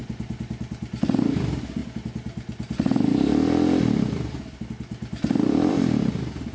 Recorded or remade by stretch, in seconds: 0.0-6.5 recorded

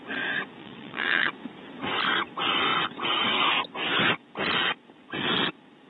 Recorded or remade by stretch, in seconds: 0.0-0.6 recorded; 0.6-1.3 remade; 1.3-5.9 recorded

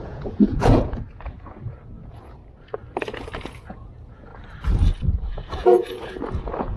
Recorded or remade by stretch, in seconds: 0.0-2.4 remade; 2.4-3.0 recorded; 3.0-4.3 remade; 4.3-5.1 recorded; 5.1-6.8 remade

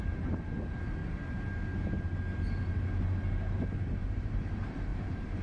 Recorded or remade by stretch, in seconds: 0.0-4.0 recorded; 4.0-4.5 remade; 4.5-4.9 recorded; 4.9-5.4 remade

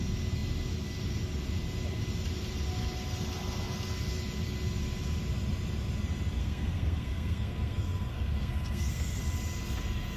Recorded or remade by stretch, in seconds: 0.0-6.4 recorded; 6.4-9.2 remade; 9.2-10.2 recorded

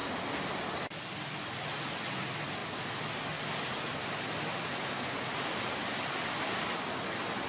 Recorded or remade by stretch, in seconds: 0.0-7.5 recorded

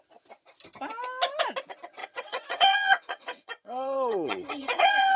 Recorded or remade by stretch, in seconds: 0.0-2.0 recorded; 2.0-5.2 remade